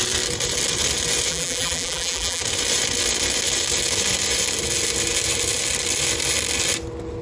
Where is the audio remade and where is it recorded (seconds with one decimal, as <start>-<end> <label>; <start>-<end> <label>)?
0.0-1.3 recorded; 1.3-2.4 remade; 2.4-7.2 recorded